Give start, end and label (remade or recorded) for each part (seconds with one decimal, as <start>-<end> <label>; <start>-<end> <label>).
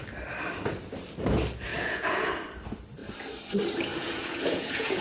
0.0-1.7 recorded; 1.7-2.3 remade; 2.3-3.9 recorded; 3.9-5.0 remade